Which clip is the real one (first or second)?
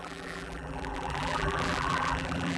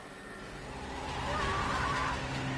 second